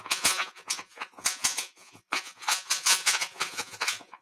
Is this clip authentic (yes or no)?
no